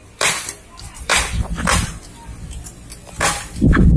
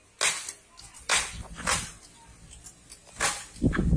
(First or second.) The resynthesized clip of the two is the first